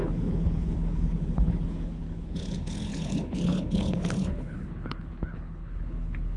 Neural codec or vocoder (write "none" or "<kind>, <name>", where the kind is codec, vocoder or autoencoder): codec, HILCodec